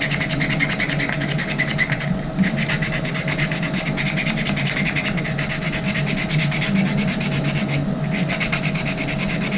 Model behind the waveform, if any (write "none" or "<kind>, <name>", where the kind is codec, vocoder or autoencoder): none